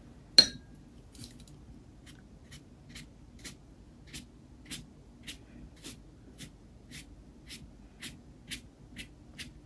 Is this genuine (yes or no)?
yes